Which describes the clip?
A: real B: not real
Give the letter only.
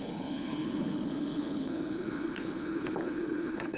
B